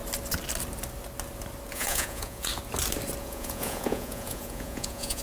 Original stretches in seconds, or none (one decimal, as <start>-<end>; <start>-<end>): 0.0-1.7; 2.5-3.2